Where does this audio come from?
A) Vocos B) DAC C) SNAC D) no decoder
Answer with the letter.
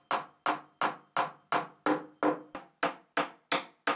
D